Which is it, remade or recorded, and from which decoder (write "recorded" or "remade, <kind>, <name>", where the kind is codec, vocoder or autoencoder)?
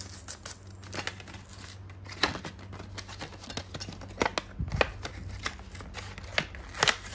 recorded